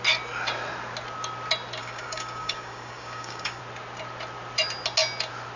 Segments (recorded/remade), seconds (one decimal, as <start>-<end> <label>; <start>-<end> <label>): 0.0-1.8 recorded; 1.8-3.6 remade; 3.6-5.6 recorded